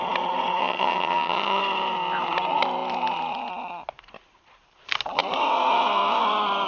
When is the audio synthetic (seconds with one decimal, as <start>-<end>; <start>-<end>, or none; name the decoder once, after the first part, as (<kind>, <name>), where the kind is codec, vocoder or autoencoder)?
0.6-1.6 (vocoder, HiFi-GAN)